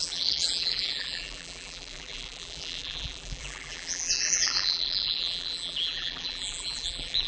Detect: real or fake fake